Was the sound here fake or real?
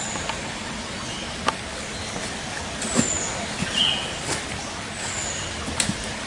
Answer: real